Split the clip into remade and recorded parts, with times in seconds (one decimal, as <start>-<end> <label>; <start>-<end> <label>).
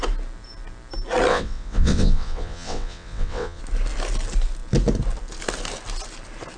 0.0-1.3 recorded; 1.3-3.6 remade; 3.6-6.6 recorded